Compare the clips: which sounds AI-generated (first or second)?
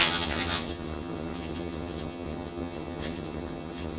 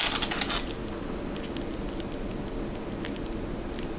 first